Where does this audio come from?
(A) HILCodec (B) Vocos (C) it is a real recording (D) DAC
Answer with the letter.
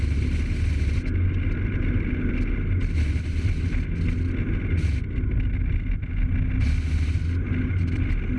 C